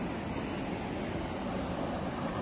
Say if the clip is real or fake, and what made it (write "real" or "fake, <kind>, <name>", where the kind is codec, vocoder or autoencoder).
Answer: real